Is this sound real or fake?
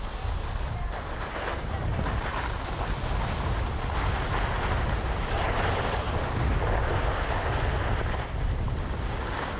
real